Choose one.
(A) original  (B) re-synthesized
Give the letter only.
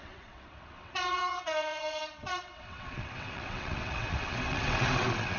B